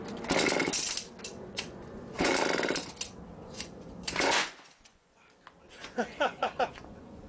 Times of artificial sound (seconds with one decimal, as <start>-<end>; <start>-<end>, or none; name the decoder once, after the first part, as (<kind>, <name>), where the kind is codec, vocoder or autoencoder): 1.3-2.3 (vocoder, Vocos); 3.4-5.2; 5.8-7.3